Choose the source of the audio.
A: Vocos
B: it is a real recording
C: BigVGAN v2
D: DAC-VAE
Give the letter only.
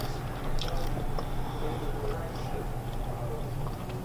B